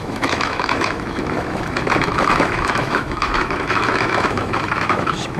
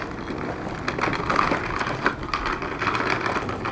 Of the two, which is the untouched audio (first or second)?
second